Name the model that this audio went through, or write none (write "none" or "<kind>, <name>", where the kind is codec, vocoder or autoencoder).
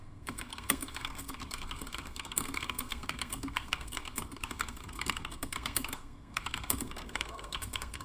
codec, SNAC